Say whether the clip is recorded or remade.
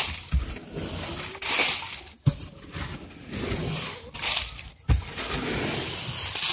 recorded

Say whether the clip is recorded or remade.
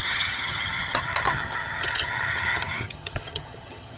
remade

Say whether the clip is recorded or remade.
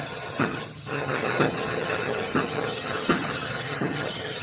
remade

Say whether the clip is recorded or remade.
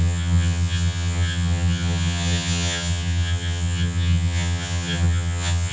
remade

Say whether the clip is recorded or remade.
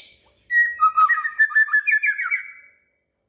recorded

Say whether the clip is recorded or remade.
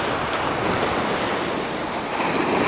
recorded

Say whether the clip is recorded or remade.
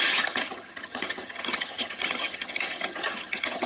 remade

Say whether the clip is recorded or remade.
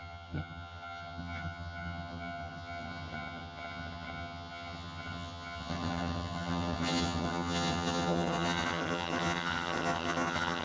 remade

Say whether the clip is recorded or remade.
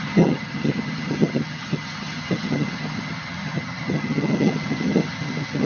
remade